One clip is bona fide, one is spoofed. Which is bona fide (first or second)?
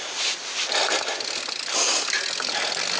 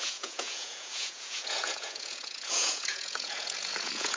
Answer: first